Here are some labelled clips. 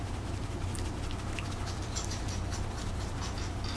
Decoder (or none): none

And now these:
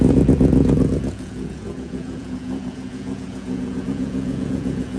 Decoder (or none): vocoder, Vocos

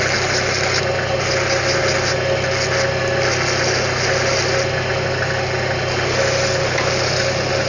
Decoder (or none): none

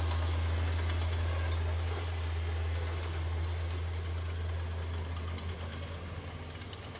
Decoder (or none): none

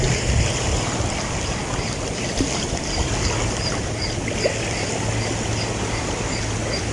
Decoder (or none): none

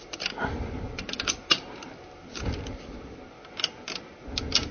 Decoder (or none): none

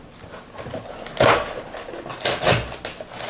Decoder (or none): none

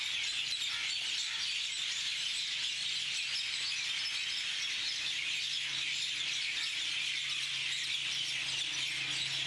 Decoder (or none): none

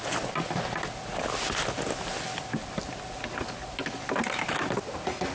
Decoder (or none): none